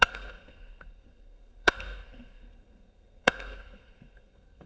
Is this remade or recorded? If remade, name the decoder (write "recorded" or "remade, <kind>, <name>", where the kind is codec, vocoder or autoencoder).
remade, codec, SNAC